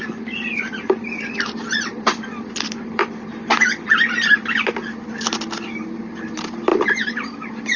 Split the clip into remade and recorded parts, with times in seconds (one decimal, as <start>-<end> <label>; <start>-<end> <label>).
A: 0.0-1.9 recorded; 1.9-4.2 remade; 4.2-6.7 recorded; 6.7-7.8 remade